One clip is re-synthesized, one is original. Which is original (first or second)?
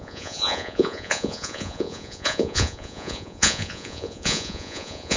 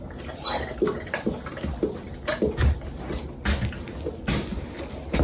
second